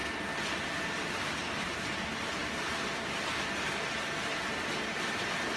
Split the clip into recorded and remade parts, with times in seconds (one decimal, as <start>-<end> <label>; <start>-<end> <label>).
0.0-5.6 recorded